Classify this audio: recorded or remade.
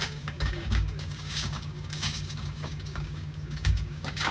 remade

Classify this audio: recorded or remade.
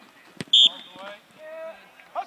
recorded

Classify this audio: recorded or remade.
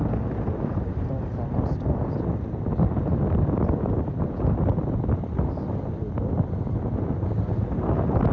recorded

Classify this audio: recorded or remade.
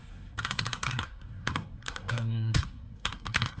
remade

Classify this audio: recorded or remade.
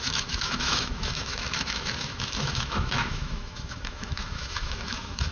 remade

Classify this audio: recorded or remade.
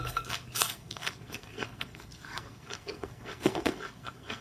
remade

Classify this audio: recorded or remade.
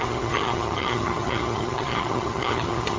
remade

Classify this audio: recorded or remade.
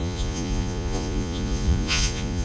remade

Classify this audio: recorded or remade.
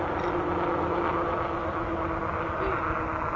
recorded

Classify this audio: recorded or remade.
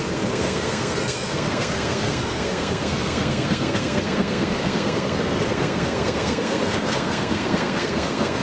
remade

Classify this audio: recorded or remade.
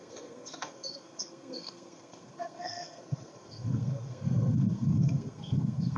remade